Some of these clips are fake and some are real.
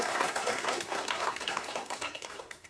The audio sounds fake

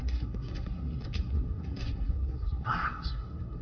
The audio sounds fake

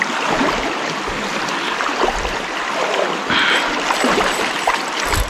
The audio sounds real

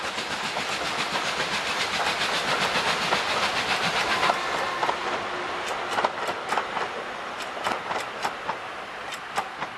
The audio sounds real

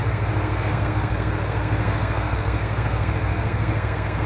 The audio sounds fake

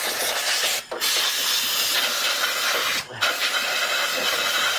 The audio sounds real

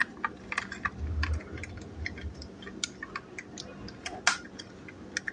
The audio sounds real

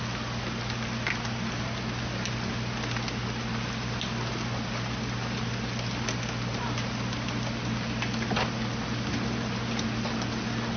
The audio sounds real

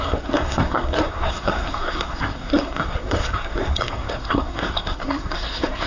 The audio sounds fake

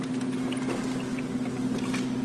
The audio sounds real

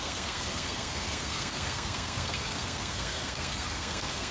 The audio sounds fake